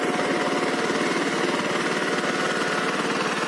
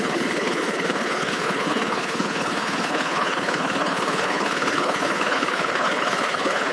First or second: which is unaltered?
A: first